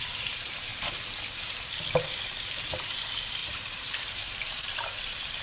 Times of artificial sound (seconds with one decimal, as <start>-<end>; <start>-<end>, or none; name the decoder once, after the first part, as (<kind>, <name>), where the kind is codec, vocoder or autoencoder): 0.0-0.7 (vocoder, BigVGAN v2); 1.4-3.4; 4.1-5.4